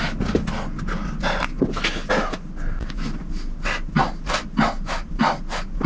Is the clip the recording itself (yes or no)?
yes